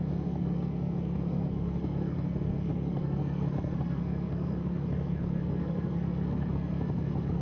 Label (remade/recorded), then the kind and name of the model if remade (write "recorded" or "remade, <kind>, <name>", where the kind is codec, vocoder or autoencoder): remade, codec, SNAC